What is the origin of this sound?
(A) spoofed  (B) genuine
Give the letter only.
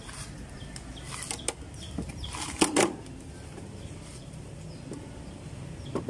B